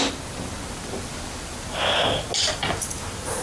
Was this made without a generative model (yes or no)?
yes